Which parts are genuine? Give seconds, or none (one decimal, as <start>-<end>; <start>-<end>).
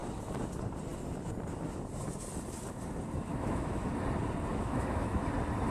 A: 0.0-3.3; 3.9-4.5; 5.2-5.7